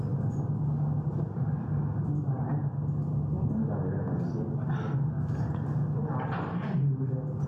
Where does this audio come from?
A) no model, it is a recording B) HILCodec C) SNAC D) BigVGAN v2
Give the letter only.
A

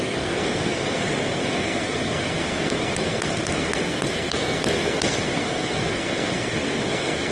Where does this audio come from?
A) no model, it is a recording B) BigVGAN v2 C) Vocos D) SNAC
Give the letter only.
D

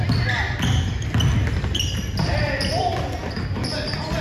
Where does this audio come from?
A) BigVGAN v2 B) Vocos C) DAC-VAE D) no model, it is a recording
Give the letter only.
D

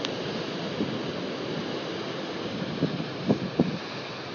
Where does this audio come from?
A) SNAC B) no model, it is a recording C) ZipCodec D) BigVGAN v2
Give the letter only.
B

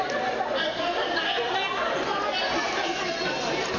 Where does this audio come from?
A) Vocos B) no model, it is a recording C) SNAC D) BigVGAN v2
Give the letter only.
B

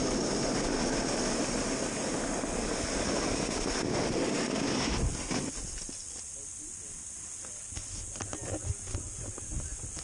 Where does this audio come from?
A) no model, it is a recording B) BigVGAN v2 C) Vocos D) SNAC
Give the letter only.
A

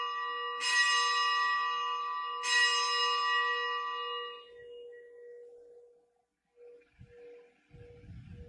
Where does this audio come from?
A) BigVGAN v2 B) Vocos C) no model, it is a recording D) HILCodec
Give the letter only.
C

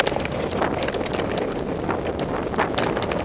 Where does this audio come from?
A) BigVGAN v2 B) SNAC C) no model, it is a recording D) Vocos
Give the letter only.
C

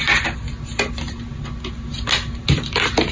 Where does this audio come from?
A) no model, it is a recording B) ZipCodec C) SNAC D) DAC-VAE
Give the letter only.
A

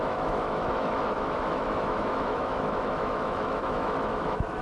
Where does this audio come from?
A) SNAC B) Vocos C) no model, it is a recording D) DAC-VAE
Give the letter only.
D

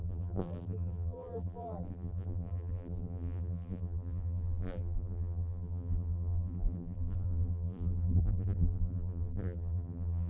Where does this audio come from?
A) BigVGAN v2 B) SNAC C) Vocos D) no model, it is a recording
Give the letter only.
A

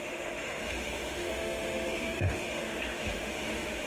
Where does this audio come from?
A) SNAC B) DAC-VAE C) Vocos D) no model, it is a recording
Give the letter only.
B